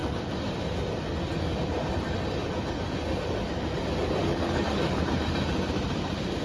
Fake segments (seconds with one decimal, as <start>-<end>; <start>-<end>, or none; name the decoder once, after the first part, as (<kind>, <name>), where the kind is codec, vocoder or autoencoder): 4.2-4.9 (codec, DAC)